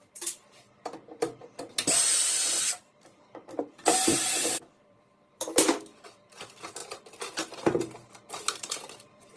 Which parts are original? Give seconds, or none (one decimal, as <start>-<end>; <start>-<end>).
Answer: 1.4-2.8; 6.8-8.1